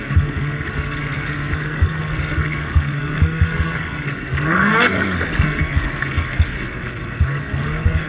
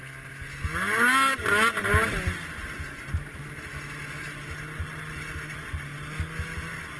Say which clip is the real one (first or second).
second